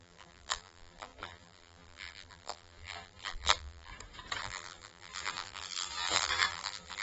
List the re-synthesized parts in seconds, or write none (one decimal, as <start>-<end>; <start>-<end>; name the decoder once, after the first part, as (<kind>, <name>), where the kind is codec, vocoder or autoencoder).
0.0-3.9 (vocoder, BigVGAN v2); 4.4-7.0